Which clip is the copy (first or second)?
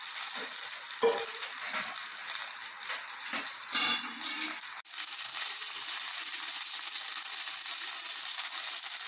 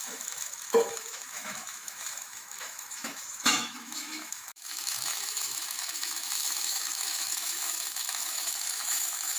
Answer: second